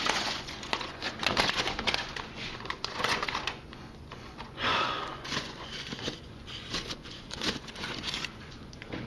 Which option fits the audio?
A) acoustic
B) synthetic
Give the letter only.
B